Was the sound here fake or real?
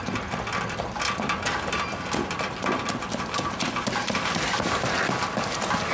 real